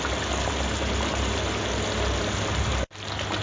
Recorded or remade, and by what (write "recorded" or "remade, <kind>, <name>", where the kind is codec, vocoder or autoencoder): recorded